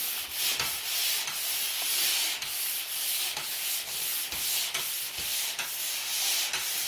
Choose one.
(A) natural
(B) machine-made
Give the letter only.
A